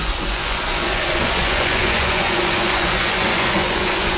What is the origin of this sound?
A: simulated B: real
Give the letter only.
A